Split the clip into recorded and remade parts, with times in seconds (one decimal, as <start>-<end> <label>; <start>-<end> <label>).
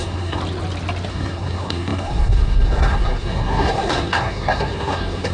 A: 0.0-0.4 remade; 0.4-1.1 recorded; 1.1-5.3 remade